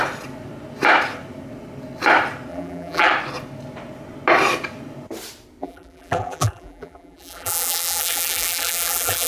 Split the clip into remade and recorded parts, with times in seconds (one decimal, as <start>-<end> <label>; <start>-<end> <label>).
0.0-2.5 recorded; 2.5-3.1 remade; 3.1-5.6 recorded; 5.6-9.3 remade